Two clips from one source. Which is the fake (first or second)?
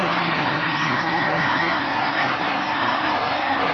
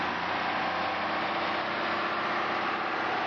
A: first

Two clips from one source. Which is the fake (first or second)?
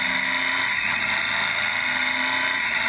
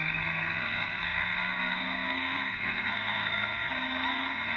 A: second